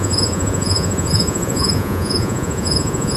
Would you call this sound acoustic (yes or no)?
no